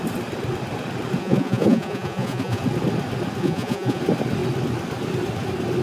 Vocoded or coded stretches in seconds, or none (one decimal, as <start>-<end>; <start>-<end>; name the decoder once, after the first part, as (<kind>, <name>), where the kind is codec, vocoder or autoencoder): 1.2-2.6 (vocoder, Vocos); 3.4-4.0